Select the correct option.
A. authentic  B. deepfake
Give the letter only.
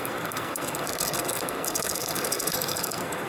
B